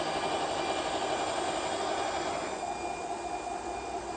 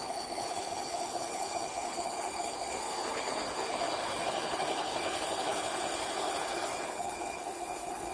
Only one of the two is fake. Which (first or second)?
second